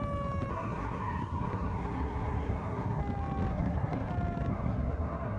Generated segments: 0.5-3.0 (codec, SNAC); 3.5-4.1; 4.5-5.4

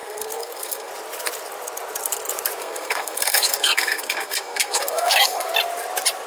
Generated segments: 0.0-0.9 (codec, SNAC); 2.6-5.5

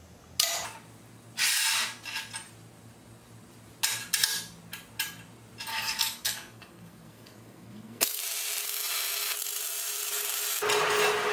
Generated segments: 5.7-8.2 (codec, SNAC)

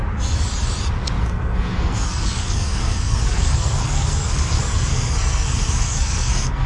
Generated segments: 1.2-6.7 (codec, SNAC)

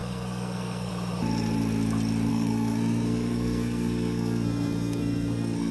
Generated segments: 0.0-0.9 (codec, SNAC); 2.3-5.7

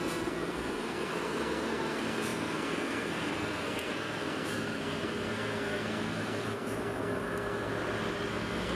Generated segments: 0.0-7.7 (codec, SNAC); 8.3-8.8